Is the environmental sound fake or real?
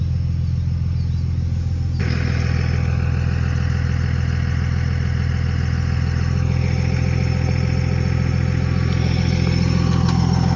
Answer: real